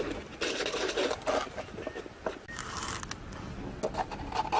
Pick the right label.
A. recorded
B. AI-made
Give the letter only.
A